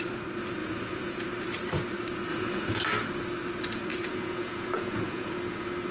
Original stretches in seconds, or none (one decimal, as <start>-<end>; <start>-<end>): 0.0-0.6; 1.3-2.3; 2.8-3.9; 5.3-5.9